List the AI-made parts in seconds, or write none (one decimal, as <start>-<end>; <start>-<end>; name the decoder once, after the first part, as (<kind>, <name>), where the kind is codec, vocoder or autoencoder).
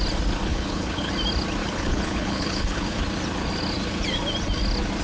0.5-1.1 (codec, HILCodec); 1.6-3.0